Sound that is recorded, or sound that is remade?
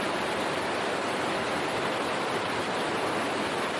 recorded